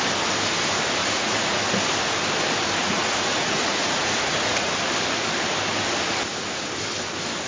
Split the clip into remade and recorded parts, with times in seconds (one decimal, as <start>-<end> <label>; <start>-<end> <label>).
0.0-1.0 recorded; 1.0-1.6 remade; 1.6-2.8 recorded; 2.8-4.7 remade; 4.7-7.5 recorded